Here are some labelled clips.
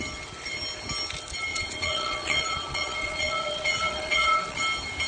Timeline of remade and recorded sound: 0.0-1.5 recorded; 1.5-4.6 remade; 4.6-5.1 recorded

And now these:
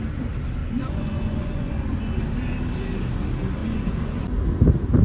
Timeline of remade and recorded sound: 0.0-0.6 recorded; 0.6-2.1 remade; 2.1-3.6 recorded; 3.6-4.2 remade; 4.2-5.0 recorded